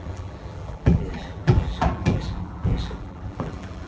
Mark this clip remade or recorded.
remade